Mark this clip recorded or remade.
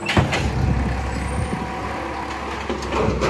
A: recorded